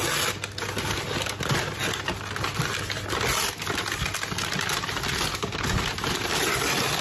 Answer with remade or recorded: recorded